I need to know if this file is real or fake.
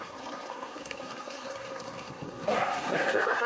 fake